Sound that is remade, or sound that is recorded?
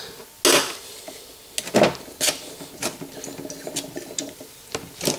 recorded